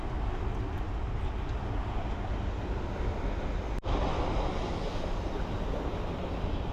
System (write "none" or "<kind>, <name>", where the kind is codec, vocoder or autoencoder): none